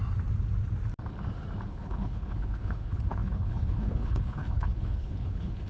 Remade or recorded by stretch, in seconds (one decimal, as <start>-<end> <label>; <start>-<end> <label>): 0.0-1.7 recorded; 1.7-5.7 remade